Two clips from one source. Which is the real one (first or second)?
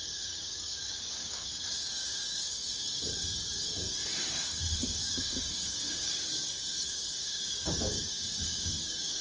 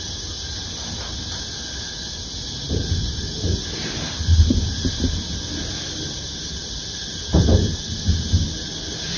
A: second